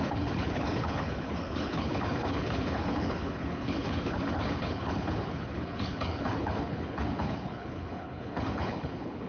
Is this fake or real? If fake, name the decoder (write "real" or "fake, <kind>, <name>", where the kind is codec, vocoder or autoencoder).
fake, codec, HILCodec